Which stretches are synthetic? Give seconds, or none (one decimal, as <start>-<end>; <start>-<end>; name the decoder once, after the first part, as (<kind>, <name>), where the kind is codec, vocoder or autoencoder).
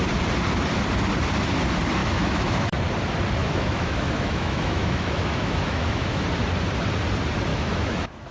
2.0-2.8 (autoencoder, DAC-VAE); 3.4-6.2; 7.5-8.3